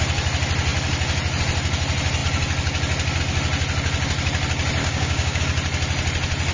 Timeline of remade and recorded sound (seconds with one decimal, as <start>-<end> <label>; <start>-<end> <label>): 0.0-4.8 recorded; 4.8-5.4 remade; 5.4-6.5 recorded